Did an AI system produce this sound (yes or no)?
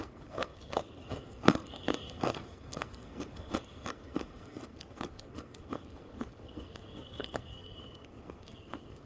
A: yes